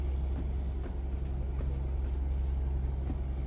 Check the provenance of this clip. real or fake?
real